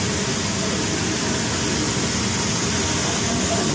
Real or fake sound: real